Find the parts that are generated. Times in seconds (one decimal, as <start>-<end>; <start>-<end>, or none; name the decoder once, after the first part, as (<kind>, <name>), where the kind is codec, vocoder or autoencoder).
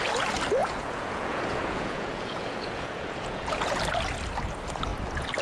0.6-3.8 (vocoder, Vocos)